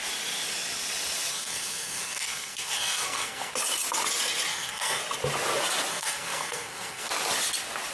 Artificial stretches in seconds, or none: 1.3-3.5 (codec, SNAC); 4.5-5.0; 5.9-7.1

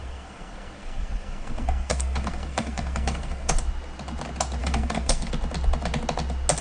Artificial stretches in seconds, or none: 0.0-3.5 (codec, SNAC); 4.6-5.3

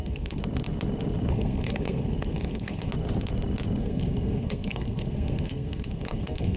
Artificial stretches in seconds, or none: 0.0-0.4 (codec, SNAC); 1.3-2.9; 3.8-6.6

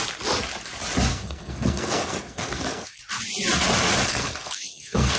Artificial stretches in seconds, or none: 1.1-3.0 (codec, SNAC); 4.1-5.2

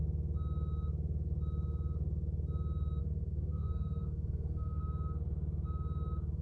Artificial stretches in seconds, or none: 3.0-4.8 (codec, SNAC)

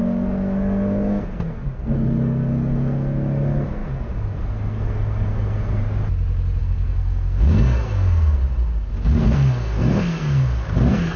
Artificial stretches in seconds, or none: 0.0-5.8 (codec, SNAC); 6.6-8.4; 8.9-11.2

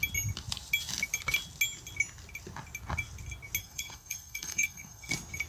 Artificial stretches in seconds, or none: 3.6-5.1 (codec, SNAC)